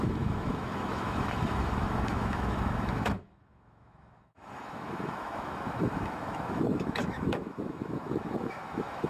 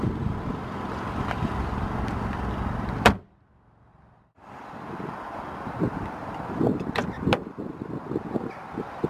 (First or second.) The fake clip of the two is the first